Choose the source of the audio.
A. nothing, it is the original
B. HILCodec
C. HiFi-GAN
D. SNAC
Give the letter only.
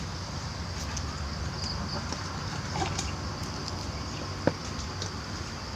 A